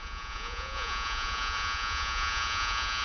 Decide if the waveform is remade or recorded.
remade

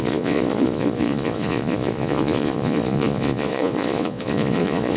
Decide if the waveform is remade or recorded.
remade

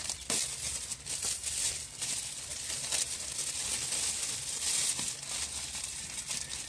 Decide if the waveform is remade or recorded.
recorded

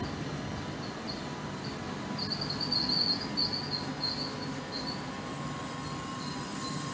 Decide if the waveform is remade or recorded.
recorded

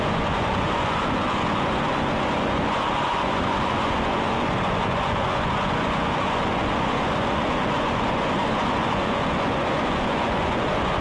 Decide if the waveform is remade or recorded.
remade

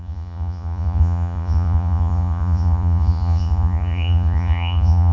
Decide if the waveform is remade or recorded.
remade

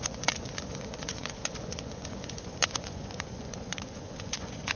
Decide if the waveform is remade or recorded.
remade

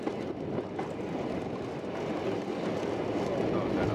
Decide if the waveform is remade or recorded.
recorded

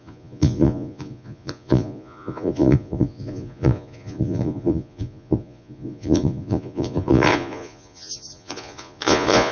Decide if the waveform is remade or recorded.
remade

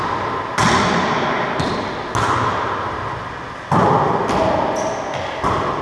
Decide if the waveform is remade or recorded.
recorded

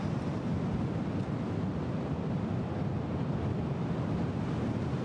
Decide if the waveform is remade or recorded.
recorded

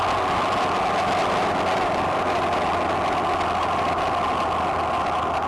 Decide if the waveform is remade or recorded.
recorded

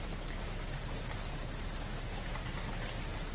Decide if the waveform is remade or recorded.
recorded